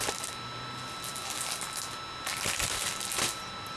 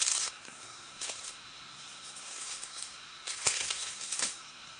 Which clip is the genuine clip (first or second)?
first